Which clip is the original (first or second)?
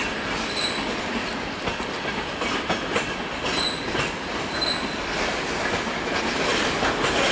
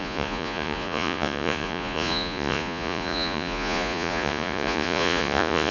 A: first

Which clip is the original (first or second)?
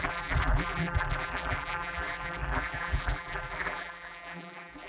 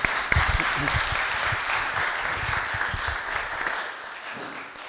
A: second